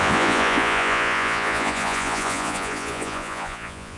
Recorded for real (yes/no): no